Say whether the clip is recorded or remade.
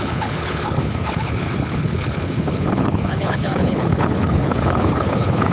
remade